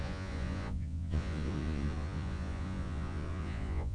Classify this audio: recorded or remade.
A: remade